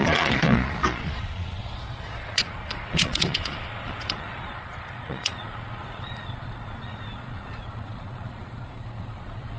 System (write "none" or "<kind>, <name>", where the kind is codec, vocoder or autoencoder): vocoder, Vocos